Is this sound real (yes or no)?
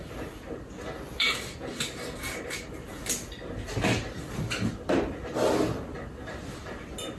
yes